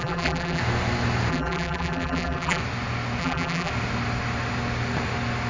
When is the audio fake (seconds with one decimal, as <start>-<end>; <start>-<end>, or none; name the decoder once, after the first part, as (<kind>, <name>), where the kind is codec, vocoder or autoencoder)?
0.0-0.6 (vocoder, BigVGAN v2); 1.3-2.6; 3.2-3.7